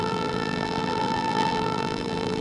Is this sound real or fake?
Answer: fake